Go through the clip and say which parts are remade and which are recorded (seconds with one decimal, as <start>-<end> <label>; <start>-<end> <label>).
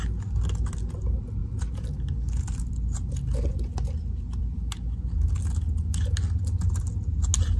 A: 0.0-7.6 recorded